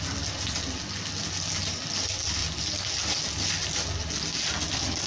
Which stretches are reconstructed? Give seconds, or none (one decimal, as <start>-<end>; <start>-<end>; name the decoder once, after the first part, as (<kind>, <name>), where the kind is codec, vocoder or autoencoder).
none

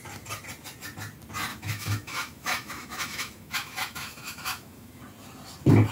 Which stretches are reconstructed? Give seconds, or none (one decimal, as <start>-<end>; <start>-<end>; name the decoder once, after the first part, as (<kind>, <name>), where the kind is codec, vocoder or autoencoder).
1.5-5.0 (autoencoder, DAC-VAE)

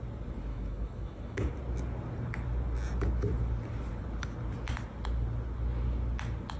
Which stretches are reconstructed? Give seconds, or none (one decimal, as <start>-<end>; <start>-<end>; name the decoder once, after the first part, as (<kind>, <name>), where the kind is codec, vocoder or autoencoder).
0.5-1.5 (autoencoder, DAC-VAE)

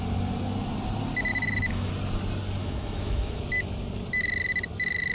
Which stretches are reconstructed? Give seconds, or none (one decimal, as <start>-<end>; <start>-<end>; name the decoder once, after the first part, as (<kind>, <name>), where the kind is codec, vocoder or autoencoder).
1.3-1.9 (autoencoder, DAC-VAE); 2.6-3.4

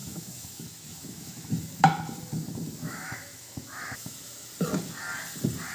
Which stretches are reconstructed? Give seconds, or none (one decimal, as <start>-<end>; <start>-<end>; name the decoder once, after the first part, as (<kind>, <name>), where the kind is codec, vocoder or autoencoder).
0.0-1.5 (autoencoder, DAC-VAE); 2.8-4.5